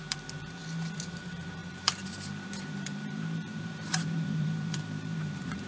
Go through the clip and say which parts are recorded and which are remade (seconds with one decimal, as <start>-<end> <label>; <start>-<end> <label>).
0.0-0.6 remade; 0.6-1.1 recorded; 1.1-5.7 remade